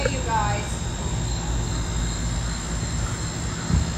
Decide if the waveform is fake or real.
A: real